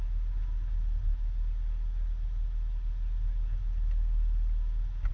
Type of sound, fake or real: real